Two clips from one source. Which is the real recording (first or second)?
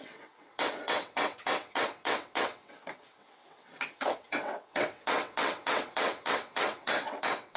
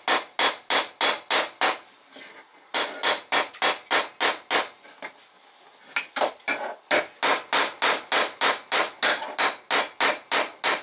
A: second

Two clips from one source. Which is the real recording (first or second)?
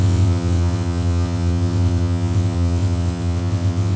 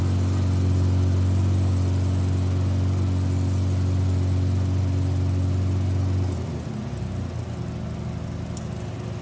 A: second